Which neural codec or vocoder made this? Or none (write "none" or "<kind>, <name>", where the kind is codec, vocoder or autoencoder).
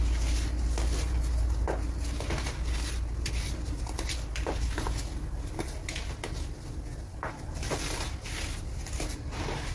none